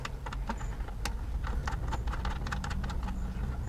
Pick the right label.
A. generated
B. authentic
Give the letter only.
B